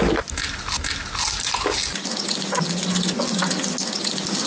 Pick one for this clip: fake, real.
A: real